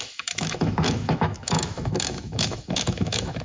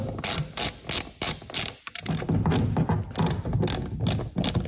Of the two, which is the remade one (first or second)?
first